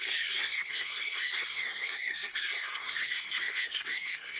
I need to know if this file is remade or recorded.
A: remade